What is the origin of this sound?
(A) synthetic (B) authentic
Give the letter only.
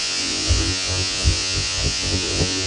A